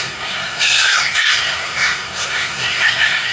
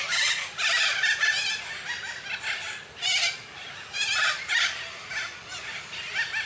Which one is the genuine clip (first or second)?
second